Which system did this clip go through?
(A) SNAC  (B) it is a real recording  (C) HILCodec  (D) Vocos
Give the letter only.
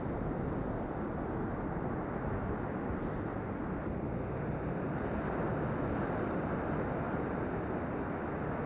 B